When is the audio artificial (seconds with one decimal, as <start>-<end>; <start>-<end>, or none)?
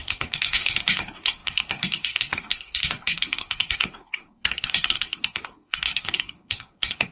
0.0-7.1